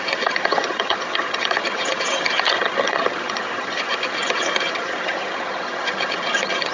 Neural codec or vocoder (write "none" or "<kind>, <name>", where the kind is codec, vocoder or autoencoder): vocoder, HiFi-GAN